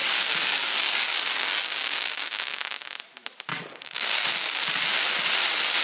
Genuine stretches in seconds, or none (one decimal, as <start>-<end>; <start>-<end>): 3.0-3.5; 4.3-5.8